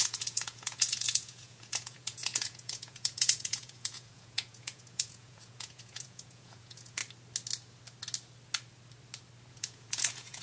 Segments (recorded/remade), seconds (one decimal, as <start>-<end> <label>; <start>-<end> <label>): 0.0-7.0 remade; 7.0-9.5 recorded; 9.5-10.4 remade